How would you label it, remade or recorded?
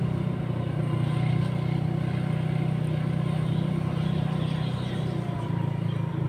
recorded